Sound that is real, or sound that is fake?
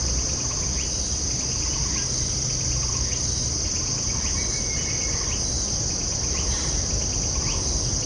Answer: real